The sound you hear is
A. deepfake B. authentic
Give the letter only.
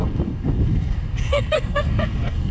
A